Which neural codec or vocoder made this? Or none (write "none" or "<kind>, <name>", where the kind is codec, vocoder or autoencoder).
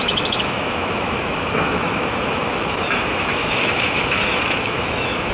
autoencoder, DAC-VAE